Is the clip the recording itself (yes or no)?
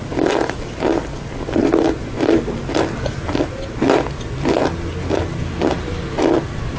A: yes